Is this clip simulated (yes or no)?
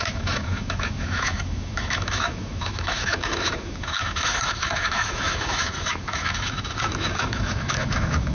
yes